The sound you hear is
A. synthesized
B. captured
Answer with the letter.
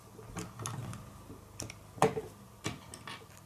B